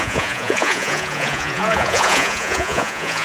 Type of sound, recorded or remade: remade